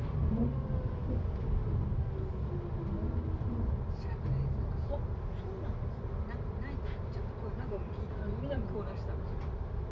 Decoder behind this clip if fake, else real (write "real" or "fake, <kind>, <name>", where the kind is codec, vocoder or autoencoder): real